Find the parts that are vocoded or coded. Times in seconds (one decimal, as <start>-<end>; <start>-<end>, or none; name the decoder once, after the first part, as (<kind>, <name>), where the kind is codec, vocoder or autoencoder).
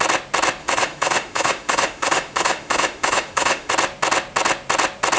0.6-3.7 (autoencoder, DAC-VAE)